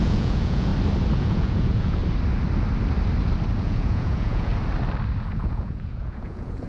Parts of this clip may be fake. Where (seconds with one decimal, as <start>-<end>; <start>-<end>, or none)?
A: 0.0-0.7; 1.2-2.0; 3.6-4.5; 5.3-6.7